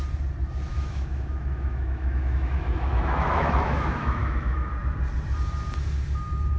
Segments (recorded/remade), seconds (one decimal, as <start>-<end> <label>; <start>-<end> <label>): 0.0-0.7 recorded; 0.7-4.7 remade; 4.7-6.6 recorded